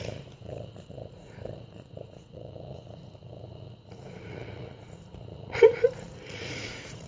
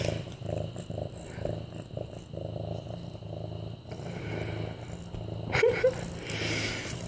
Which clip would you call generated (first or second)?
first